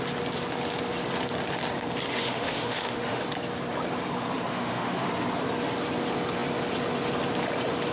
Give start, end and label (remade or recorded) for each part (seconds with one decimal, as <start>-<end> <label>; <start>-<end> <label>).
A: 0.0-2.1 recorded; 2.1-3.2 remade; 3.2-4.5 recorded; 4.5-5.1 remade; 5.1-7.9 recorded